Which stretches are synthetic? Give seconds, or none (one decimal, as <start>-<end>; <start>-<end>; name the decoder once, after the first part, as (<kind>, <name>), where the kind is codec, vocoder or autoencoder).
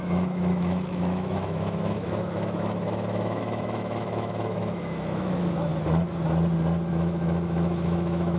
0.0-5.7 (autoencoder, DAC-VAE); 6.9-8.4